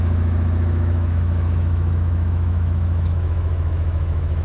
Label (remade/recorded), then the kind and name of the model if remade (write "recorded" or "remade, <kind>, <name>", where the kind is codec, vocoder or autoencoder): remade, autoencoder, DAC-VAE